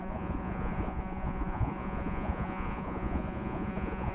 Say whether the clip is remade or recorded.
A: remade